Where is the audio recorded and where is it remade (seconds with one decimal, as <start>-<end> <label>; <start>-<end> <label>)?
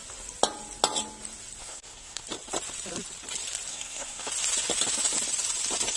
0.0-1.6 recorded; 1.6-2.2 remade; 2.2-3.7 recorded; 3.7-4.3 remade; 4.3-6.0 recorded